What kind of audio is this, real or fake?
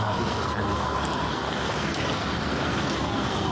fake